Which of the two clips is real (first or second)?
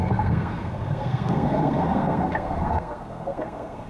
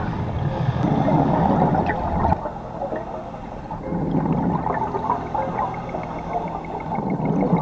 second